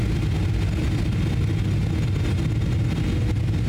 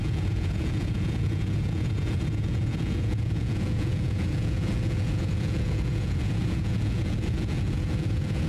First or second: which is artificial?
second